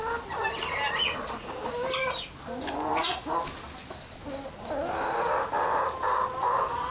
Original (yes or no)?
yes